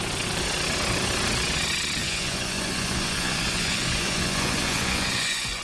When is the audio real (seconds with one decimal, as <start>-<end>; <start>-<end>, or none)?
0.0-2.0